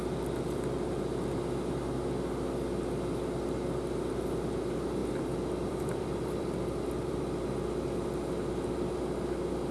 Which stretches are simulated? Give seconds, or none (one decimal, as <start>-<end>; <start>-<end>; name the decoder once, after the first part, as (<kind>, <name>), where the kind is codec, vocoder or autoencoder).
0.0-1.0 (vocoder, BigVGAN v2); 5.0-7.4